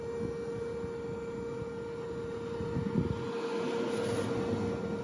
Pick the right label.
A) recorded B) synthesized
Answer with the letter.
A